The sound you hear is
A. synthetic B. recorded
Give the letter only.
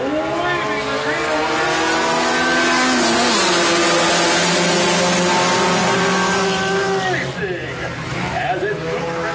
B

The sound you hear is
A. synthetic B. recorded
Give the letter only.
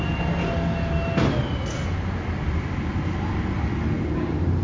B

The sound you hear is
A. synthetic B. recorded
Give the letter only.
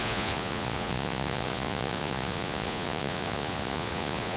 A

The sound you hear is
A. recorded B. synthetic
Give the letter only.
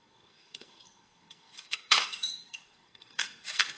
B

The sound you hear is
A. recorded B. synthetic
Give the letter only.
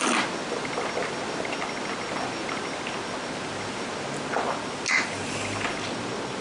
A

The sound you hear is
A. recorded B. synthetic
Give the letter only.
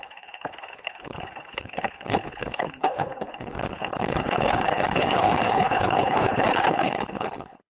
B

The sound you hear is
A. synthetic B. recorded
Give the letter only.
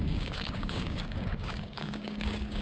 A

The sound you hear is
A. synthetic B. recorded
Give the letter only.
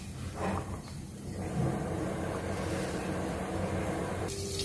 A